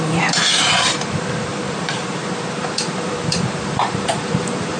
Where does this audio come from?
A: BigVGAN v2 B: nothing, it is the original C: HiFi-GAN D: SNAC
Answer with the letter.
A